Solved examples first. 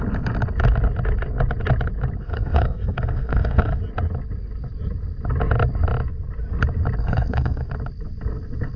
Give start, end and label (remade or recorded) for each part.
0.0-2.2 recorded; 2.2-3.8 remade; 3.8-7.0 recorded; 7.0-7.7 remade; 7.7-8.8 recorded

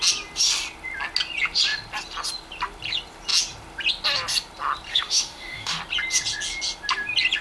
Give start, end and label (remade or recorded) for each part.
0.0-4.9 recorded; 4.9-5.8 remade; 5.8-7.4 recorded

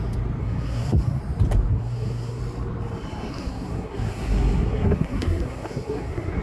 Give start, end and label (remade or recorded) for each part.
0.0-0.4 recorded; 0.4-1.2 remade; 1.2-1.7 recorded; 1.7-2.4 remade; 2.4-3.3 recorded; 3.3-6.4 remade

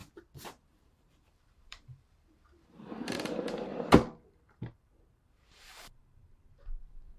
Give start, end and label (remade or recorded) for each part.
0.0-0.5 recorded; 0.5-3.7 remade; 3.7-4.2 recorded; 4.2-7.2 remade

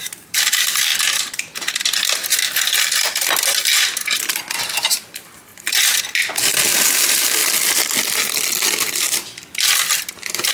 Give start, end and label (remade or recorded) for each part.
0.0-0.9 remade; 0.9-4.6 recorded; 4.6-5.5 remade; 5.5-6.3 recorded; 6.3-7.4 remade; 7.4-10.5 recorded

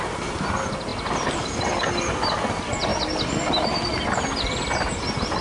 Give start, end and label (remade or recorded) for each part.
0.0-5.4 recorded

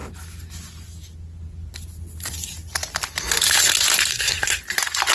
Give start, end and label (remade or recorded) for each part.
0.0-4.1 recorded; 4.1-4.6 remade; 4.6-5.1 recorded